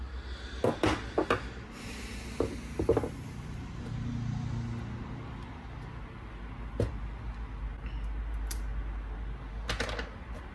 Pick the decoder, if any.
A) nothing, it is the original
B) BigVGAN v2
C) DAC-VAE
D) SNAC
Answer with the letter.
A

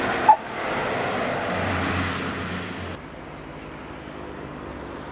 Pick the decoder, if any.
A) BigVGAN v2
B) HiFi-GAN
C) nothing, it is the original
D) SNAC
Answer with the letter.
C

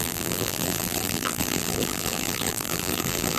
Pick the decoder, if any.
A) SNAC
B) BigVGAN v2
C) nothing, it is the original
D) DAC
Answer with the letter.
B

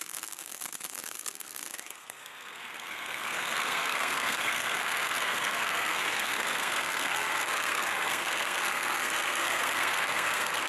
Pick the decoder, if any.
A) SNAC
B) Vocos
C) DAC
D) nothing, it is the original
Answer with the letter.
A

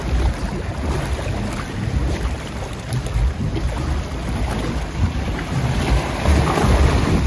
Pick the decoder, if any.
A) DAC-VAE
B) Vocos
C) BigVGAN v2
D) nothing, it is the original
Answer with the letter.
D